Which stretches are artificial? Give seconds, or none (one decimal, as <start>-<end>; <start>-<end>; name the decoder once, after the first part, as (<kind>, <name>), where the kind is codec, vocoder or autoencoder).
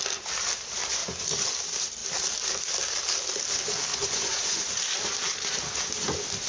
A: 3.9-4.7 (vocoder, Vocos)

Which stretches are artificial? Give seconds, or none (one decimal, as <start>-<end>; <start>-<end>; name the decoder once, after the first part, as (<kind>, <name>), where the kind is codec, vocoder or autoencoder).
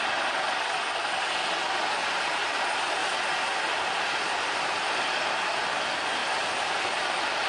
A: 2.0-2.6 (vocoder, BigVGAN v2); 3.0-5.5; 6.2-7.5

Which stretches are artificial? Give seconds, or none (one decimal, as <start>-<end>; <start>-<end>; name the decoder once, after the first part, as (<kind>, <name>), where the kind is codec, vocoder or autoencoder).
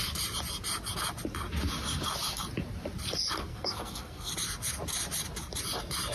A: 3.5-4.3 (codec, SNAC)